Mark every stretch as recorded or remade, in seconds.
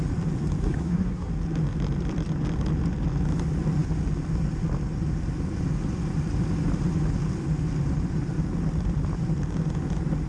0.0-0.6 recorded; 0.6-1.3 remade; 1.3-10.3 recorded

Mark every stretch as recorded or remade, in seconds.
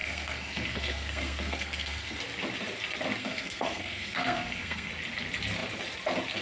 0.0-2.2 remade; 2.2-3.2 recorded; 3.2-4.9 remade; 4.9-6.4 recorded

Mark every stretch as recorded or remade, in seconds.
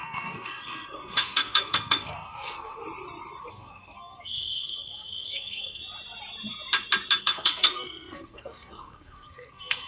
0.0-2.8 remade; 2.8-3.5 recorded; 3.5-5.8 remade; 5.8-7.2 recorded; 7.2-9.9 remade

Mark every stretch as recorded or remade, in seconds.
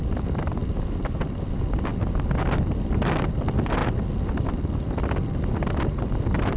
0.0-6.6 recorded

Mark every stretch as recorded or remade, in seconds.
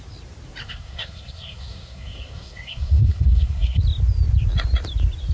0.0-0.6 recorded; 0.6-3.8 remade; 3.8-5.3 recorded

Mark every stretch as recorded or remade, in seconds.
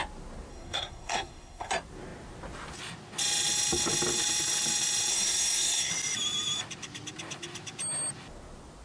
0.0-0.5 recorded; 0.5-1.7 remade; 1.7-5.1 recorded; 5.1-5.9 remade; 5.9-8.8 recorded